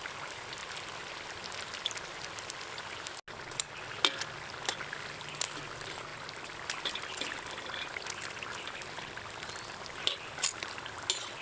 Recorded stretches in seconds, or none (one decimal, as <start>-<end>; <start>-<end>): 0.0-11.4